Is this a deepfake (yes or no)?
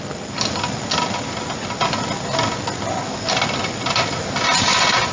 no